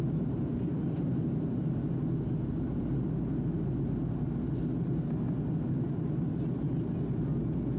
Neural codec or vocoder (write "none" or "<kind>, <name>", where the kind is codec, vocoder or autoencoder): none